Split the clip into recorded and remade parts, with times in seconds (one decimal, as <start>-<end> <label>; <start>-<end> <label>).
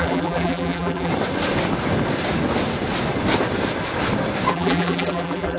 0.0-1.1 remade; 1.1-4.5 recorded; 4.5-5.6 remade